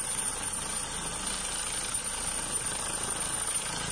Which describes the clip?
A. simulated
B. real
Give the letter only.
B